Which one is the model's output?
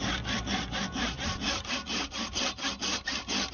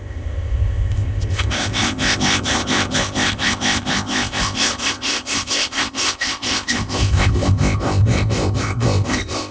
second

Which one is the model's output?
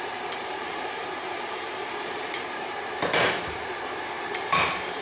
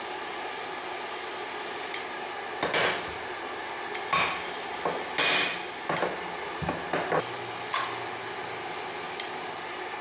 first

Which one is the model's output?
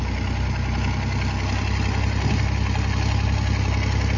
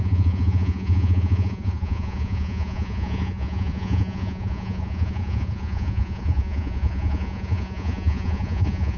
second